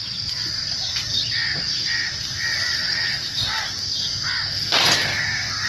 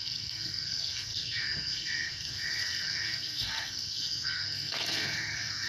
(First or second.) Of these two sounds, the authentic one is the first